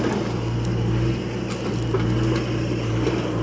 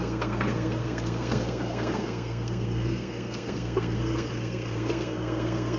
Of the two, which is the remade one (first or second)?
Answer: second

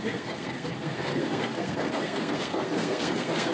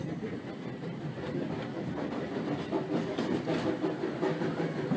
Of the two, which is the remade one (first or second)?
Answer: first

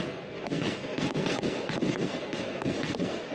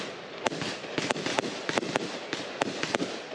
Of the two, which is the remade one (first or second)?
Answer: first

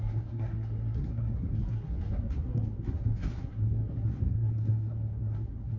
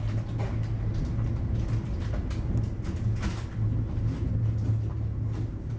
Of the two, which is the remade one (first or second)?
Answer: first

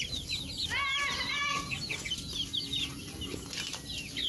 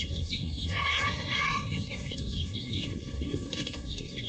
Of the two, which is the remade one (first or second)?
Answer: second